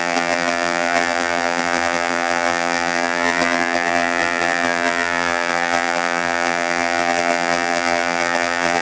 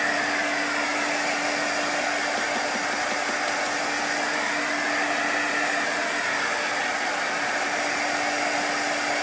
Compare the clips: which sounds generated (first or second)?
first